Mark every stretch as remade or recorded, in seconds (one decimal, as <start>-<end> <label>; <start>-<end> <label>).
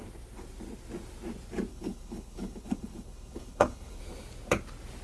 0.0-1.7 recorded; 1.7-4.0 remade; 4.0-5.0 recorded